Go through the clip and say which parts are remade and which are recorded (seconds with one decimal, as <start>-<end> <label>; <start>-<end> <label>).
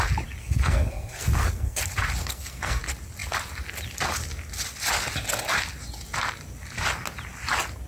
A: 0.0-0.4 recorded; 0.4-1.8 remade; 1.8-2.2 recorded; 2.2-2.8 remade; 2.8-7.9 recorded